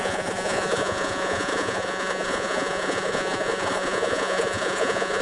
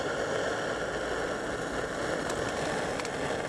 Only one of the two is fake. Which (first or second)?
first